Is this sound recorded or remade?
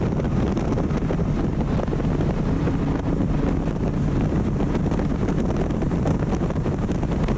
recorded